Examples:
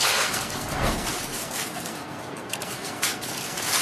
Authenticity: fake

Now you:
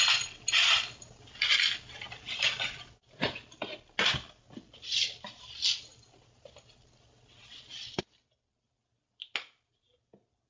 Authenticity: real